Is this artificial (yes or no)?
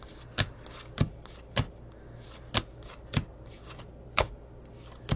no